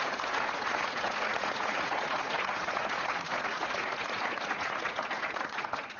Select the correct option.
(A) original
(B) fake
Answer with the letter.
B